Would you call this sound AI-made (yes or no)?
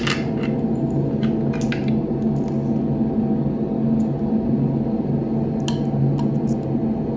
no